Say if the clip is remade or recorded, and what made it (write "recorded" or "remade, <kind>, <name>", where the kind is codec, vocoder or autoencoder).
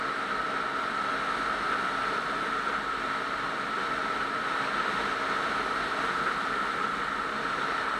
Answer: recorded